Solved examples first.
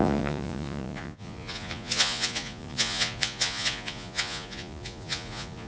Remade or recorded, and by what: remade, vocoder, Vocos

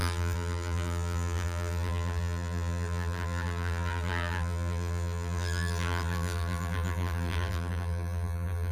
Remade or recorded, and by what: remade, vocoder, BigVGAN v2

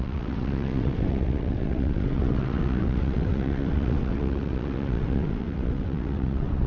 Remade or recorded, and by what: remade, vocoder, WaveNeXt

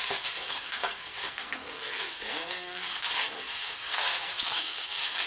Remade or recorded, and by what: remade, codec, SNAC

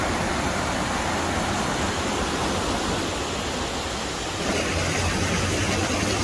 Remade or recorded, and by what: recorded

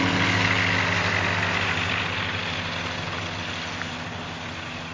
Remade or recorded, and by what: recorded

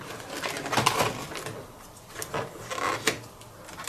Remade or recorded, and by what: recorded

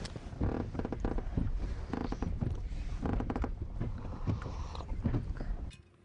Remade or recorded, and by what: recorded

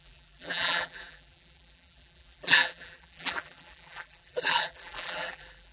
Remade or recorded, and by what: remade, vocoder, BigVGAN v2